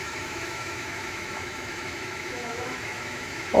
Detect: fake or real fake